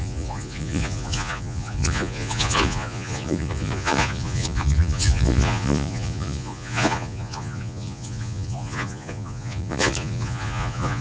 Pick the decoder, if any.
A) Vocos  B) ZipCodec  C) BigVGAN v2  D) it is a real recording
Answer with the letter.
A